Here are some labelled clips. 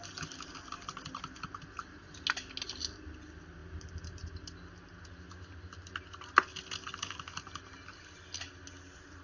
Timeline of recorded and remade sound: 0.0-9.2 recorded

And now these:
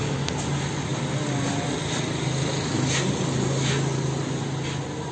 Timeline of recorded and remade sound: 0.0-5.1 recorded

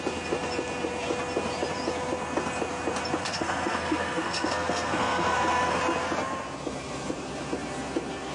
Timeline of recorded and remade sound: 0.0-3.2 recorded; 3.2-5.8 remade; 5.8-8.3 recorded

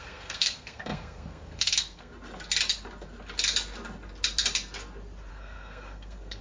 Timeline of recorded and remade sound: 0.0-2.1 remade; 2.1-5.3 recorded; 5.3-6.4 remade

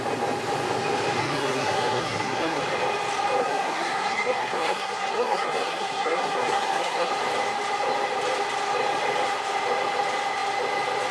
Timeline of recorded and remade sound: 0.0-1.2 recorded; 1.2-2.6 remade; 2.6-3.4 recorded; 3.4-7.1 remade; 7.1-11.1 recorded

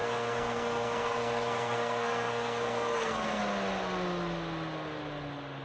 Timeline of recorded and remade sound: 0.0-3.4 remade; 3.4-5.6 recorded